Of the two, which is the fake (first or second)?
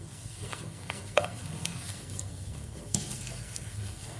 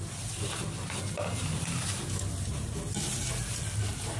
first